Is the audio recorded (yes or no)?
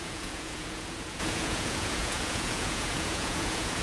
no